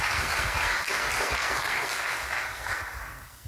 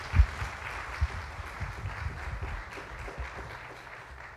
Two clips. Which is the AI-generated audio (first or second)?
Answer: first